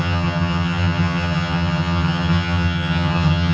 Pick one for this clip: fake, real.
fake